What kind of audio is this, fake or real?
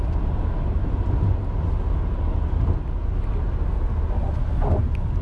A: real